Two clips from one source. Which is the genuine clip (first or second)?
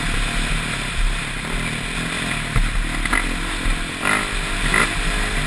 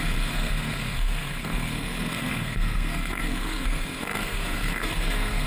first